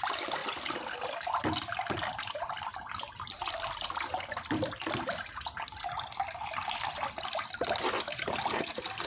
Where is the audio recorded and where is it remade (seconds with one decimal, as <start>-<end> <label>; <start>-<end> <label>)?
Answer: 0.0-9.1 recorded